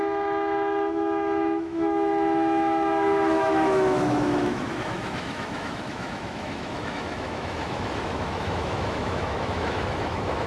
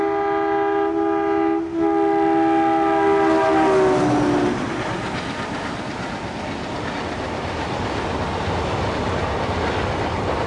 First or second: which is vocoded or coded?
first